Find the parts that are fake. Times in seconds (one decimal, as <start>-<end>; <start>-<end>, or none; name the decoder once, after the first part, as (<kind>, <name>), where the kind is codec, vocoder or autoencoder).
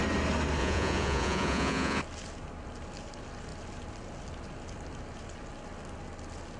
0.6-2.0 (vocoder, Vocos)